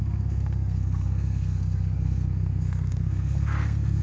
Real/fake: fake